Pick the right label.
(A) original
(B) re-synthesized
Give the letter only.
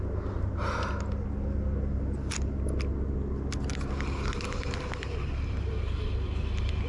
A